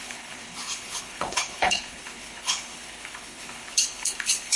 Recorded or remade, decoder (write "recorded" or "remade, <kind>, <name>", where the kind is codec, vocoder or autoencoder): remade, codec, HILCodec